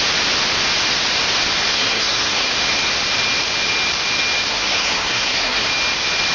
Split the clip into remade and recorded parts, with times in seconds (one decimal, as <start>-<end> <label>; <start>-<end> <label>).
0.0-1.7 recorded; 1.7-2.5 remade; 2.5-4.5 recorded; 4.5-5.7 remade; 5.7-6.3 recorded